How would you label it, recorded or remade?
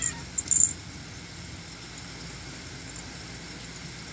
recorded